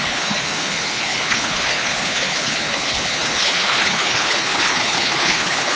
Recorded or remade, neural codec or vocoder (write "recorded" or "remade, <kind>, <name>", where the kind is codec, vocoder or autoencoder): remade, codec, HILCodec